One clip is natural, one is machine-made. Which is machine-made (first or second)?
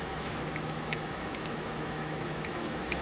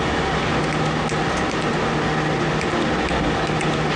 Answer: first